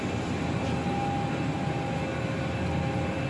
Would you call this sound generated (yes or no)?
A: no